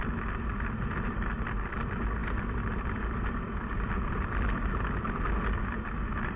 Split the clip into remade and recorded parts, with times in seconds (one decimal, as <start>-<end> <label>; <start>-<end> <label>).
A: 0.0-2.2 recorded; 2.2-4.7 remade; 4.7-6.4 recorded